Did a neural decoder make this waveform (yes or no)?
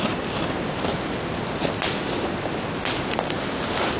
no